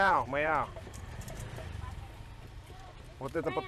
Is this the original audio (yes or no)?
no